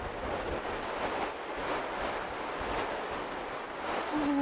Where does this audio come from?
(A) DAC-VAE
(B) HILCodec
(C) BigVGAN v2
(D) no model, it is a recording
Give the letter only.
D